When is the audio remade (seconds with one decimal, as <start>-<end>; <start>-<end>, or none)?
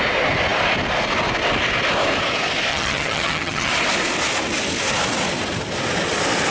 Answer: 2.7-3.7